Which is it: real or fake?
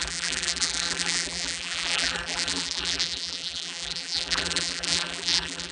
fake